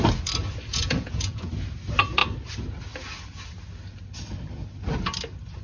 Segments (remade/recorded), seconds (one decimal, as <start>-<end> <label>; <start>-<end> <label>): 0.0-0.7 recorded; 0.7-1.5 remade; 1.5-5.6 recorded